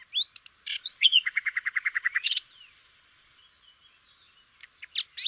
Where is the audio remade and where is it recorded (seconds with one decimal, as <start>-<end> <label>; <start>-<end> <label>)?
0.0-0.7 recorded; 0.7-3.4 remade; 3.4-5.3 recorded